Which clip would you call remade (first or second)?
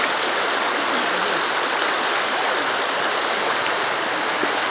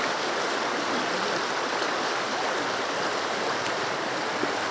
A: second